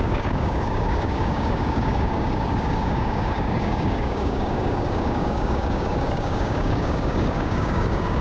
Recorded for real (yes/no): no